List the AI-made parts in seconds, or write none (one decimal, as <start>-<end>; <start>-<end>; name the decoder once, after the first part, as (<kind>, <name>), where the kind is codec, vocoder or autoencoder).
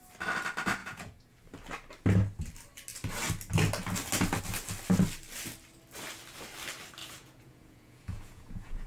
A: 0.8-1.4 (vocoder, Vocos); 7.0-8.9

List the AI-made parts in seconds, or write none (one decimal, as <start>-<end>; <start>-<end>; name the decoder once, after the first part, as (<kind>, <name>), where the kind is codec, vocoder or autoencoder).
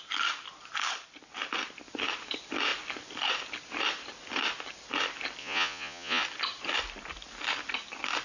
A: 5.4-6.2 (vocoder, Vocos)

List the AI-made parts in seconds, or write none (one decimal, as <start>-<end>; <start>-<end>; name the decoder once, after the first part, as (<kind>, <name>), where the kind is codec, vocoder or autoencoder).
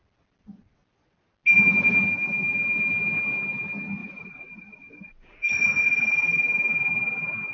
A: 4.0-5.9 (vocoder, Vocos)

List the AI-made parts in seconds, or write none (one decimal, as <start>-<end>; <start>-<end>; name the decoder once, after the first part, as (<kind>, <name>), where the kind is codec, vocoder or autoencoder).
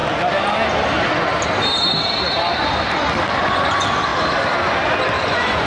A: 3.4-4.1 (vocoder, Vocos); 5.2-5.7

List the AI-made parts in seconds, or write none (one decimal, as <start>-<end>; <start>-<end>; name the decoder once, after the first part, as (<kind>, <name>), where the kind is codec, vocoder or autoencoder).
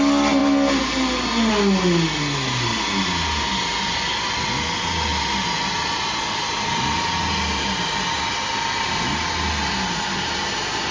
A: none